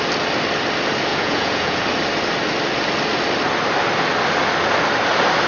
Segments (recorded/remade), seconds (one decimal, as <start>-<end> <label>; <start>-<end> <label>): 0.0-1.1 recorded; 1.1-1.9 remade; 1.9-5.5 recorded